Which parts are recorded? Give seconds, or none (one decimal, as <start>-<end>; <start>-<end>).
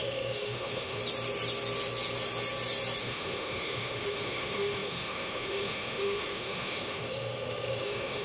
1.0-3.0